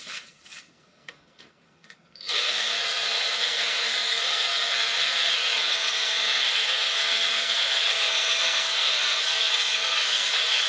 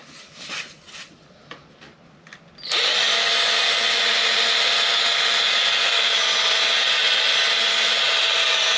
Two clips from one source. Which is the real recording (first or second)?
second